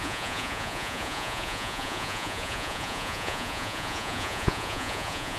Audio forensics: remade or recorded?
remade